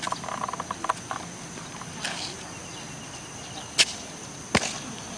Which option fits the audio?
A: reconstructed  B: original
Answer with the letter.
B